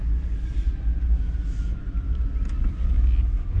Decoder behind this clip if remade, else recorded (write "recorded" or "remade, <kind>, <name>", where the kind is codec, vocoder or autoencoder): recorded